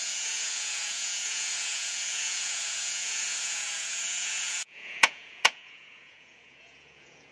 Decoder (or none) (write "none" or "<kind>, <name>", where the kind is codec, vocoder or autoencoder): vocoder, Vocos